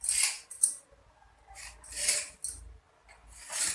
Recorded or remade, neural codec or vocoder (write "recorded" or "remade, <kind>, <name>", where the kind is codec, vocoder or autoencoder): recorded